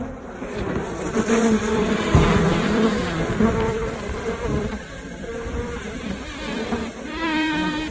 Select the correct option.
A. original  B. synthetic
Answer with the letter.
B